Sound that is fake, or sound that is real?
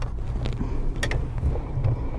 real